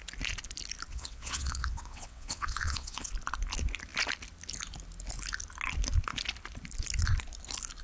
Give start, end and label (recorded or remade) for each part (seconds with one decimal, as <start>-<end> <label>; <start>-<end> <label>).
0.0-0.9 recorded; 0.9-3.1 remade; 3.1-7.8 recorded